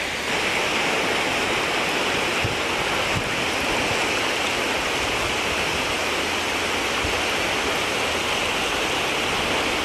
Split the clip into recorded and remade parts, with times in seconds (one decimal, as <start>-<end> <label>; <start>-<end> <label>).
0.0-9.8 recorded